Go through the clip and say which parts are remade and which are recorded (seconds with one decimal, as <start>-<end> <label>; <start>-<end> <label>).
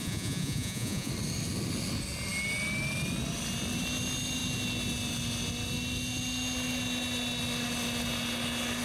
0.0-1.1 remade; 1.1-8.8 recorded